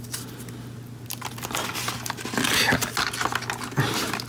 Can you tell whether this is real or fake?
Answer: real